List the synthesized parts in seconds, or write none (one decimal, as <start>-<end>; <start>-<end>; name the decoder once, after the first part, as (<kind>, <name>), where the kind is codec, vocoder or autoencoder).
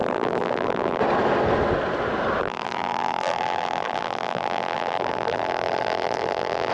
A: 0.0-1.0 (vocoder, BigVGAN v2); 2.4-6.7